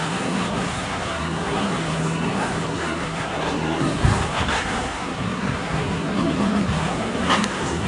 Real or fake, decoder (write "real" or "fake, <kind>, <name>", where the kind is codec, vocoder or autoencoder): fake, codec, SNAC